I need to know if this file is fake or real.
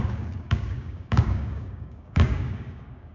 fake